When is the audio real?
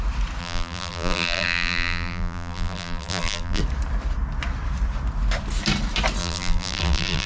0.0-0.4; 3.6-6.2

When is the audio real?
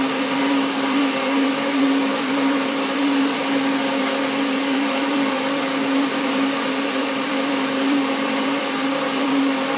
3.4-4.0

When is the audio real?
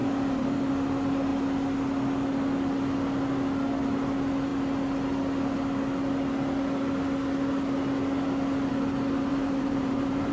0.7-9.3